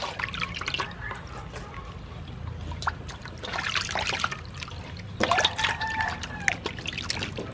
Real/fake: real